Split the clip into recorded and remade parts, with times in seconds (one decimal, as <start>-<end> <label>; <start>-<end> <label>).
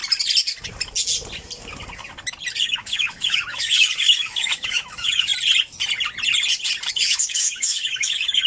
0.0-2.6 recorded; 2.6-5.3 remade; 5.3-6.9 recorded; 6.9-8.5 remade